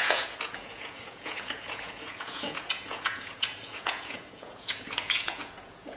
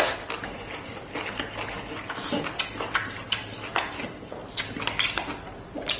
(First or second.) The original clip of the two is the second